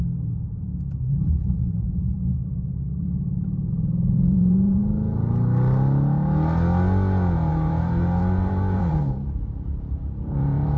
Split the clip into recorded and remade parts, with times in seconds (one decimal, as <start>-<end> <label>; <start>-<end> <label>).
0.0-4.8 remade; 4.8-7.5 recorded; 7.5-10.8 remade